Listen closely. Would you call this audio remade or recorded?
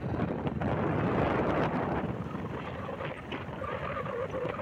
remade